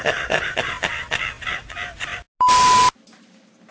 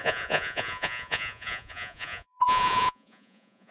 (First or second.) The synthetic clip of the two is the second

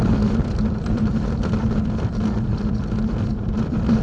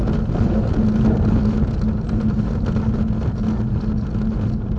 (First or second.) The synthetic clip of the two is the first